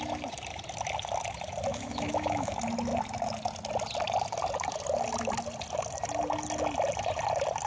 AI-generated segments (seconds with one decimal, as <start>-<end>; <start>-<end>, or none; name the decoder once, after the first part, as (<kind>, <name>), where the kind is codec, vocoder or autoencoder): 1.7-2.5 (autoencoder, DAC-VAE)